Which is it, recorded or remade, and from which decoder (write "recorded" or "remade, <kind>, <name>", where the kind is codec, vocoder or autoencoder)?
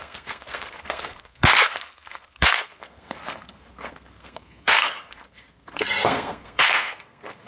remade, codec, SNAC